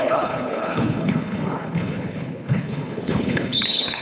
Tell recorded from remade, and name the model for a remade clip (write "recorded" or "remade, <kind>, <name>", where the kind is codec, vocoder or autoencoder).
remade, codec, HILCodec